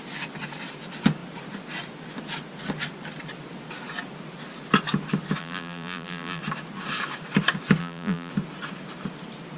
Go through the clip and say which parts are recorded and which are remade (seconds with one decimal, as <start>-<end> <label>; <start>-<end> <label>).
0.0-5.4 recorded; 5.4-6.4 remade; 6.4-7.8 recorded; 7.8-8.3 remade; 8.3-9.6 recorded